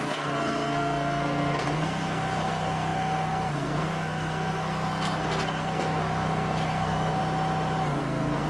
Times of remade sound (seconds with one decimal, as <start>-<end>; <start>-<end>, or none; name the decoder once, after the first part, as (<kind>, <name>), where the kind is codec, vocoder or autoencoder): 0.0-7.2 (codec, SNAC); 8.0-8.5